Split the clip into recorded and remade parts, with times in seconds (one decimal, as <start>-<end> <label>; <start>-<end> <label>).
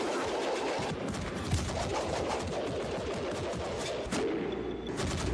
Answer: 0.0-1.9 recorded; 1.9-2.4 remade; 2.4-5.3 recorded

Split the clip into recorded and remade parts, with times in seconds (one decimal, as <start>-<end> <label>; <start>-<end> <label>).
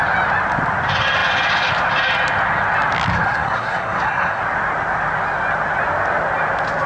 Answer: 0.0-3.1 recorded; 3.1-4.4 remade; 4.4-6.9 recorded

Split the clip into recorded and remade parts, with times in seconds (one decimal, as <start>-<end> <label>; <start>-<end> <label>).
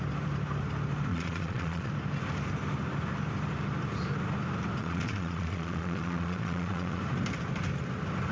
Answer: 0.0-1.1 recorded; 1.1-1.9 remade; 1.9-4.8 recorded; 4.8-7.0 remade; 7.0-8.3 recorded